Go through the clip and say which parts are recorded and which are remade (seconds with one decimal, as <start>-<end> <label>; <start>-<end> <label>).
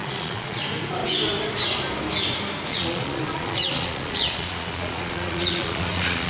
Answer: 0.0-0.6 remade; 0.6-2.7 recorded; 2.7-6.3 remade